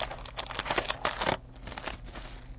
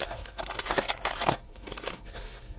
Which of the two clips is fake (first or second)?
second